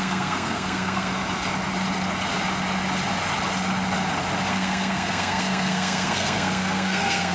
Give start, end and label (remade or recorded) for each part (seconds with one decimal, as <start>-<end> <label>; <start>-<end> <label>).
0.0-1.1 remade; 1.1-4.5 recorded; 4.5-7.3 remade